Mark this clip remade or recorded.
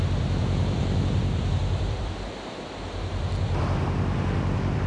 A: remade